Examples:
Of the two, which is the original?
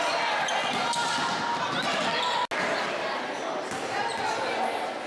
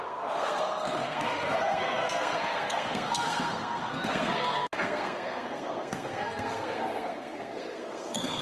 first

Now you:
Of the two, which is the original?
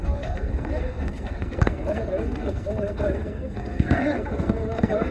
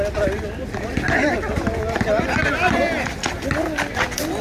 second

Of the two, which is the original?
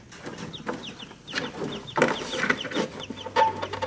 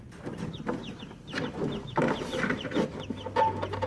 first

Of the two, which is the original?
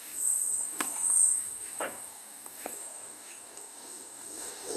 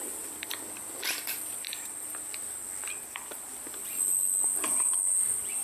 second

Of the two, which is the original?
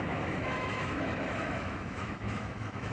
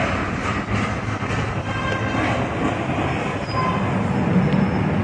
second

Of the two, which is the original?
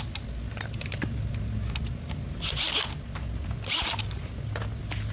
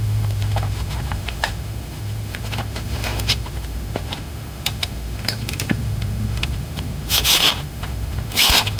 first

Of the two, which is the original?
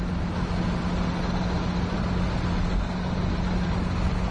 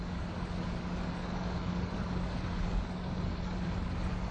first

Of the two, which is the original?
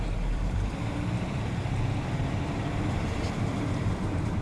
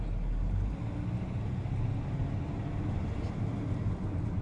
second